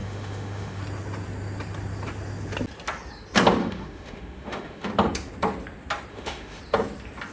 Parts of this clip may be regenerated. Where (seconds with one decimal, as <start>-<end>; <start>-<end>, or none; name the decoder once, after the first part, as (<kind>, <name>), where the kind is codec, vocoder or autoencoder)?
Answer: 0.0-0.8 (autoencoder, DAC-VAE); 3.6-4.9; 6.1-6.6